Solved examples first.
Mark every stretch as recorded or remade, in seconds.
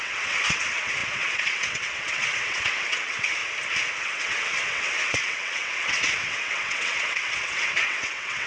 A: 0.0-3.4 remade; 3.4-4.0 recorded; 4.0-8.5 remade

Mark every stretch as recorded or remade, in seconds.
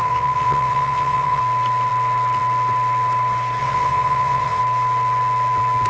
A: 0.0-1.4 remade; 1.4-3.6 recorded; 3.6-4.6 remade; 4.6-5.9 recorded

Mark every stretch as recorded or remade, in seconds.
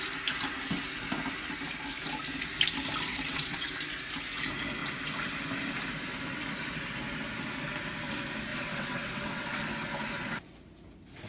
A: 0.0-3.1 recorded; 3.1-3.7 remade; 3.7-8.5 recorded; 8.5-9.6 remade; 9.6-11.3 recorded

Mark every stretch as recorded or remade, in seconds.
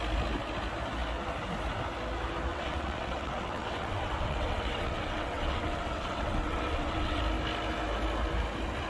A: 0.0-2.5 recorded; 2.5-7.2 remade; 7.2-8.9 recorded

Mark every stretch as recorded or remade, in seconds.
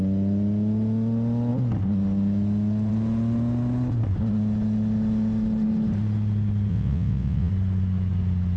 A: 0.0-6.7 recorded; 6.7-7.5 remade; 7.5-8.6 recorded